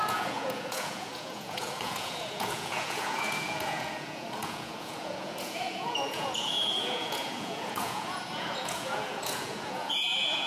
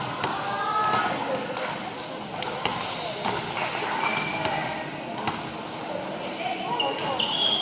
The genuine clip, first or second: second